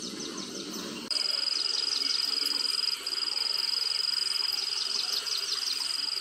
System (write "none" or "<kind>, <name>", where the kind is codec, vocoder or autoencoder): vocoder, BigVGAN v2